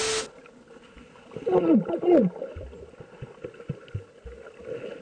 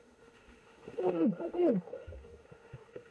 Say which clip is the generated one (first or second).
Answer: second